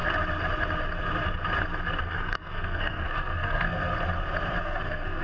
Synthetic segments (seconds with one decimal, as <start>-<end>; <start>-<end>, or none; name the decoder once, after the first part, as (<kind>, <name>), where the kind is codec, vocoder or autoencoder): 2.0-3.9 (codec, SNAC); 4.6-5.2